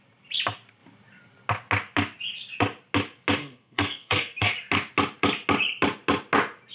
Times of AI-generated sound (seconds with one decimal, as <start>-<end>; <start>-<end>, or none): 3.4-4.5